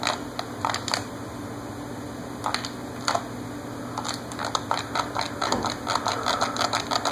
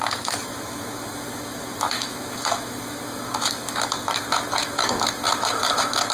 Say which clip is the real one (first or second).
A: first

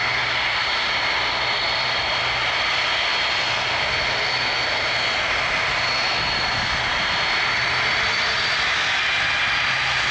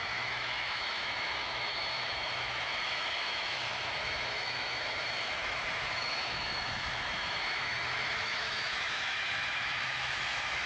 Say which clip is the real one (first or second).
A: first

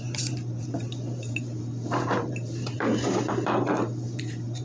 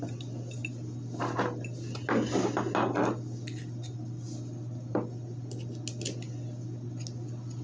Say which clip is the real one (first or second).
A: second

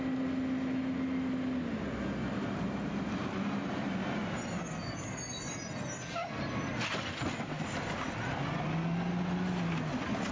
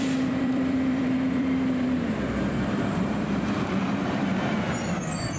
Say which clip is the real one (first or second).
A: first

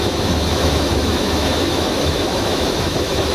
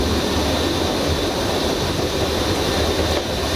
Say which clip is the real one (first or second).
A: second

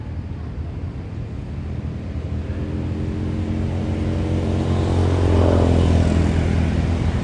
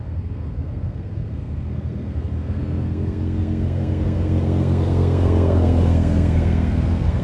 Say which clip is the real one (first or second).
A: first